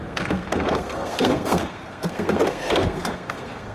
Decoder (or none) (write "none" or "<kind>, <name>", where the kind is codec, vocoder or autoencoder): codec, SNAC